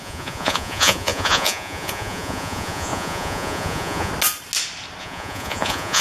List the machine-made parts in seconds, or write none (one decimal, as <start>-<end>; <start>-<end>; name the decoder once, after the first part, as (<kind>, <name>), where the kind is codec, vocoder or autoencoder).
0.0-4.1 (vocoder, Vocos); 5.0-6.0